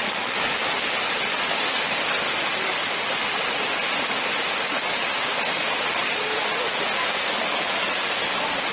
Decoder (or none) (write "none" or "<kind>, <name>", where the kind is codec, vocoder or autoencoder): none